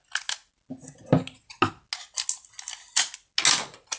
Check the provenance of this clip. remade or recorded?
recorded